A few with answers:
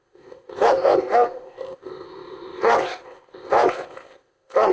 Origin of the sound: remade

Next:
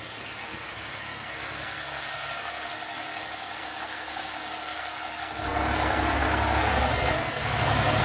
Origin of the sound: remade